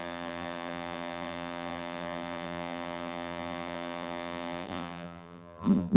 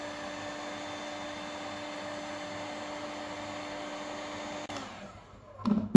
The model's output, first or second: first